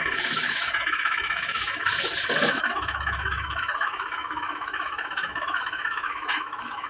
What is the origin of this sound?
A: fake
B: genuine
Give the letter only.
A